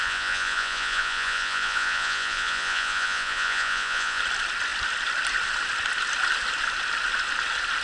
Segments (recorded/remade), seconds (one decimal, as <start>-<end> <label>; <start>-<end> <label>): 0.0-4.2 remade; 4.2-7.8 recorded